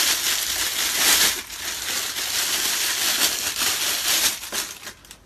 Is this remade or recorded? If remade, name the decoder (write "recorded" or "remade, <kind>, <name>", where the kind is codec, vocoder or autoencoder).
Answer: recorded